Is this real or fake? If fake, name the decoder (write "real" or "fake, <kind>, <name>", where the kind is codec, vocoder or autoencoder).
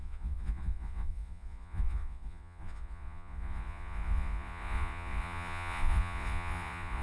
fake, vocoder, Vocos